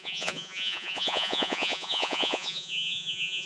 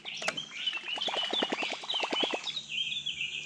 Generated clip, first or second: first